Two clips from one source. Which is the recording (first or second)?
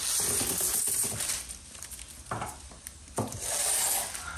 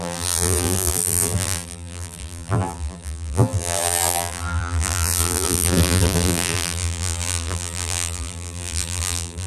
first